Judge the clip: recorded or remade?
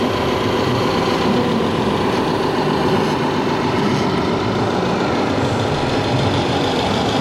recorded